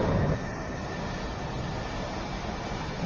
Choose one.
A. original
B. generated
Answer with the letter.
A